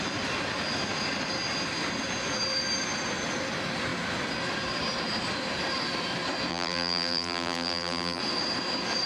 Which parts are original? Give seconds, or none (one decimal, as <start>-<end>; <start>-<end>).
0.0-6.5; 8.2-9.1